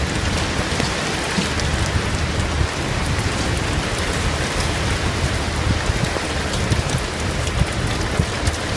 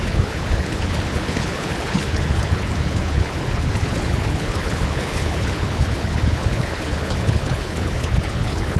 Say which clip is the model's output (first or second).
second